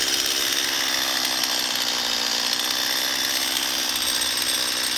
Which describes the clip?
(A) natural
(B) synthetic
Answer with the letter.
A